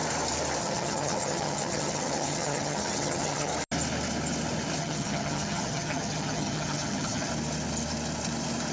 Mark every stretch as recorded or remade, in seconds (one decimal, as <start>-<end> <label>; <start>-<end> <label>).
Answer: 0.0-0.6 recorded; 0.6-3.5 remade; 3.5-4.8 recorded; 4.8-7.3 remade; 7.3-8.7 recorded